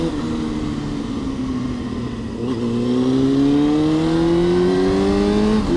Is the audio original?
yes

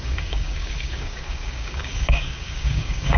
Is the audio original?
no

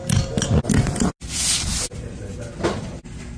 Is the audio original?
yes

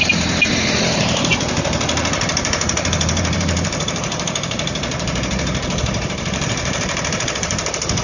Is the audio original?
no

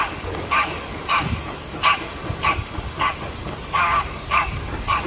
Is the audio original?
no